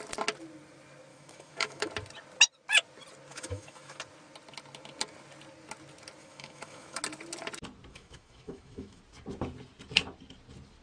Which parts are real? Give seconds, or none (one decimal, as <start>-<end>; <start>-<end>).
0.0-1.1; 1.9-3.3; 4.0-6.2; 7.0-7.9; 9.0-10.8